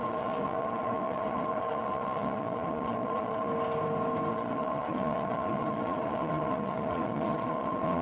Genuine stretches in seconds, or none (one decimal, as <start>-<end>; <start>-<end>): 3.5-4.3